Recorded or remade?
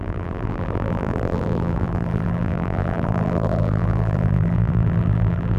remade